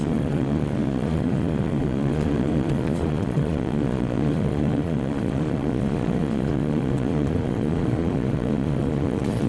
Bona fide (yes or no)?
no